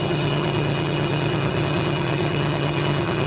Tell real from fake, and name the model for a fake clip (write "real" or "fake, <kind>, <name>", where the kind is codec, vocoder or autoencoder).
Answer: fake, vocoder, HiFi-GAN